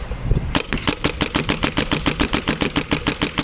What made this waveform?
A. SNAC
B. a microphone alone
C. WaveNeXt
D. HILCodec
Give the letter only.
B